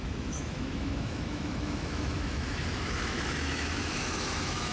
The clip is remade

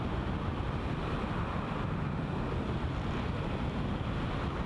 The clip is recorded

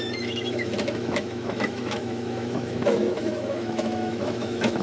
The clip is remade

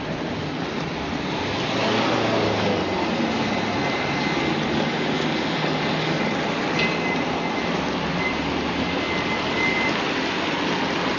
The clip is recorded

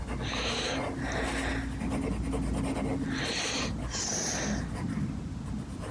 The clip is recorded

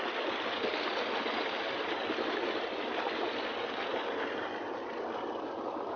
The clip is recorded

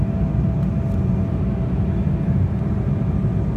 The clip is recorded